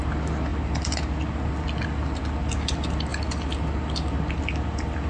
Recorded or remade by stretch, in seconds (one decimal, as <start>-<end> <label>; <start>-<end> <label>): 0.0-5.1 recorded